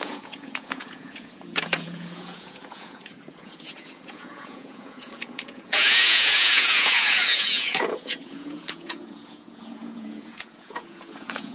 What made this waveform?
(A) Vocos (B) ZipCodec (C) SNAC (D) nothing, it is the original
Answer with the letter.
A